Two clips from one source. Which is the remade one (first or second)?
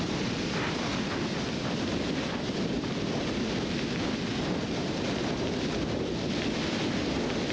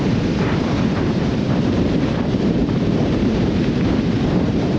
second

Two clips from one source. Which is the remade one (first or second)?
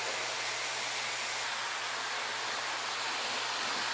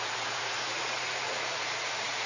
second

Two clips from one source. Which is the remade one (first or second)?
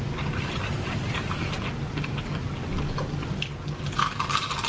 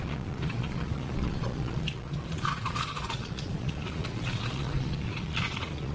second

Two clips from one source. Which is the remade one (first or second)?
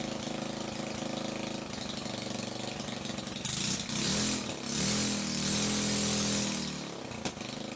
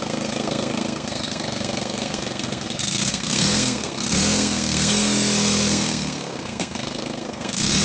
second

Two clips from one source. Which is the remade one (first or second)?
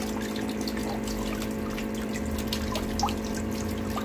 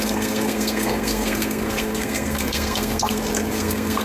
second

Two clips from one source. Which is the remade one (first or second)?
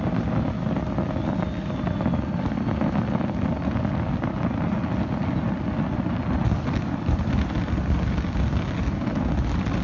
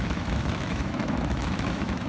second